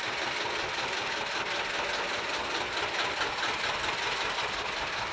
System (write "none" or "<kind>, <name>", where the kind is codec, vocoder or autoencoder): none